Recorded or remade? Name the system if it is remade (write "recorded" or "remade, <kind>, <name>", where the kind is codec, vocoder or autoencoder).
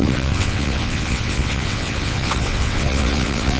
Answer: remade, vocoder, WaveNeXt